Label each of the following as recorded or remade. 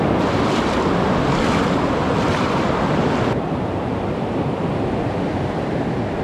recorded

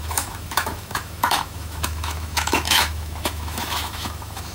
remade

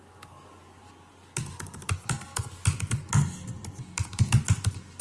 recorded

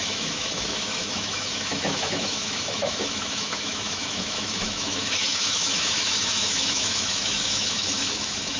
remade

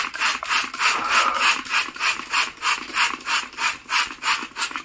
recorded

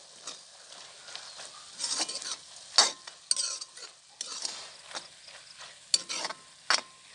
recorded